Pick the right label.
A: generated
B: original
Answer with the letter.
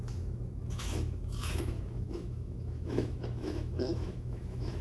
A